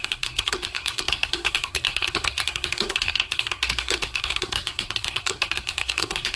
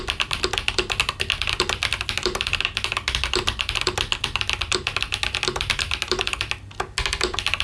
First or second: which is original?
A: second